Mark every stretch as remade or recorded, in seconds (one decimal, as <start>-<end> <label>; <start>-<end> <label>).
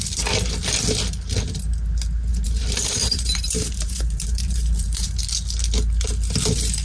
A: 0.0-2.3 recorded; 2.3-5.2 remade; 5.2-6.8 recorded